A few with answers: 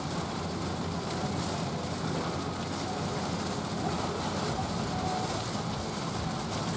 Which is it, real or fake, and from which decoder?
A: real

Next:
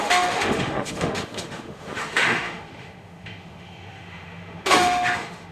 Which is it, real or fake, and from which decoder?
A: fake, autoencoder, DAC-VAE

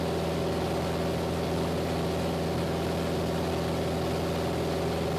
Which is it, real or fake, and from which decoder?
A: real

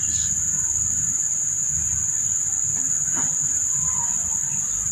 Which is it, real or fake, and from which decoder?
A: real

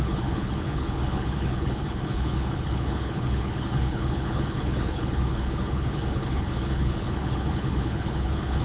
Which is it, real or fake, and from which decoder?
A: fake, codec, HILCodec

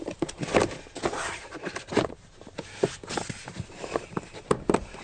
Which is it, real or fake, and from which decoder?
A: real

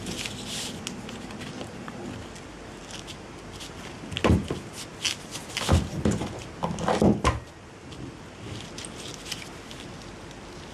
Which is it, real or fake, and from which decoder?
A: real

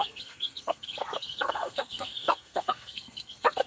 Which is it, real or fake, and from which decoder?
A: fake, codec, SNAC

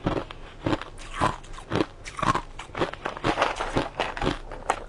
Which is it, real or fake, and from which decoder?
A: real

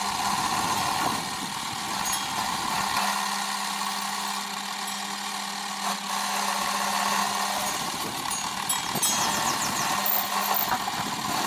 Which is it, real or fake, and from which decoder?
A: real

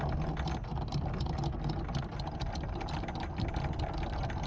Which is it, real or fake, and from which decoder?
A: real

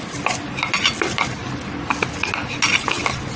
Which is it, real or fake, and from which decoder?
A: real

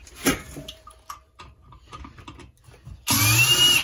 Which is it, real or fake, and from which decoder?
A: real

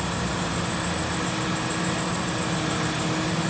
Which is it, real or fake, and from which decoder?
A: real